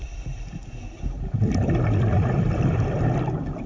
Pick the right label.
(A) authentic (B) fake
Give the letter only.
A